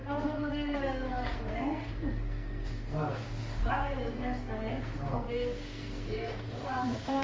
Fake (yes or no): yes